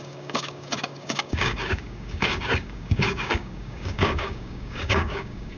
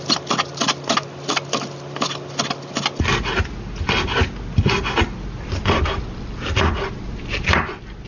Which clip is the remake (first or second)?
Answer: first